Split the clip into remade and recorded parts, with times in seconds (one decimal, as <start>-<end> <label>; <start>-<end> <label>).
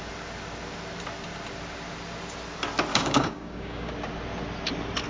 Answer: 0.0-2.9 recorded; 2.9-3.9 remade; 3.9-5.1 recorded